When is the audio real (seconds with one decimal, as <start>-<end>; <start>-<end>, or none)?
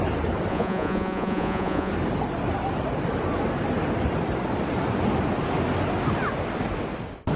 0.0-0.5; 1.9-7.4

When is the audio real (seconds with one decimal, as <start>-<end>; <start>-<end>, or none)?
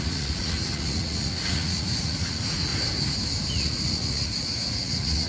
2.7-3.5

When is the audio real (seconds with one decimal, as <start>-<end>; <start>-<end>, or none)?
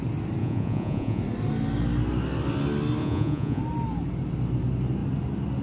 0.0-0.4; 1.2-3.0; 3.6-5.6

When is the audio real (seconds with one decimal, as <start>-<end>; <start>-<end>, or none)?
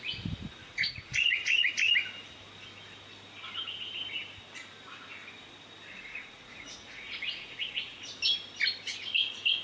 0.0-0.6; 1.7-5.9; 8.0-9.6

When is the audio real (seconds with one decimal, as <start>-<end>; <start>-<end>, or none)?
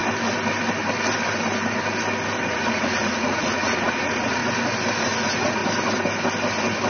0.0-2.4; 4.4-5.0; 5.6-6.9